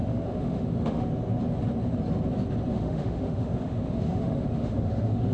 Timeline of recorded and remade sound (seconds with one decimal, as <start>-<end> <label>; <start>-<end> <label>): 0.0-1.1 remade; 1.1-2.7 recorded; 2.7-5.3 remade